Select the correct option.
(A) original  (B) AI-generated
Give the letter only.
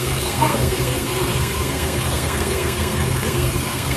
B